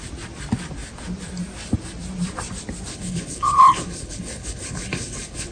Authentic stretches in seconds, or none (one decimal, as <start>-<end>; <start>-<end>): 0.0-2.9